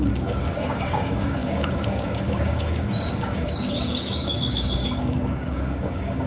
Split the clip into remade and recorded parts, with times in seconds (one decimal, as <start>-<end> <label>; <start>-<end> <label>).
0.0-6.3 remade